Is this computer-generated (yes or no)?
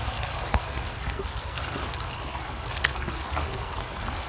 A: yes